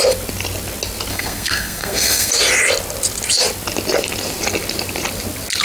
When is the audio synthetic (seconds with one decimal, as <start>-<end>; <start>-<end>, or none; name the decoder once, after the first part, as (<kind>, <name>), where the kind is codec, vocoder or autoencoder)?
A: 1.1-2.3 (codec, SNAC)